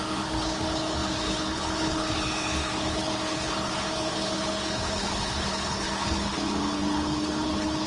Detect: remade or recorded remade